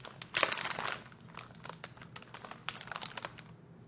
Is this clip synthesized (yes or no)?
no